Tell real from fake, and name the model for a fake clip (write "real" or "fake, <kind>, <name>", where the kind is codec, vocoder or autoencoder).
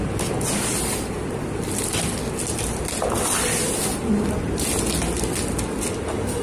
real